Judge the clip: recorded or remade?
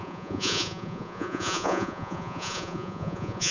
remade